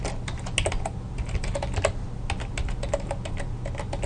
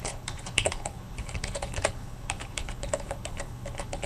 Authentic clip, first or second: first